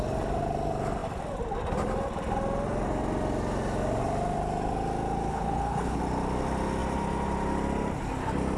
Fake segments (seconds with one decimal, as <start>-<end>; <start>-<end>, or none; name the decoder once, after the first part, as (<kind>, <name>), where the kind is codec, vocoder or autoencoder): 5.3-6.0 (codec, HILCodec)